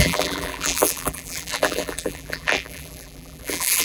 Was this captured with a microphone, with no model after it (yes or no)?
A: no